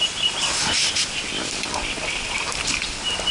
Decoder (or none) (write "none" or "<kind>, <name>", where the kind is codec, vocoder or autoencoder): none